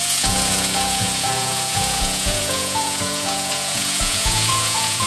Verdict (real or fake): fake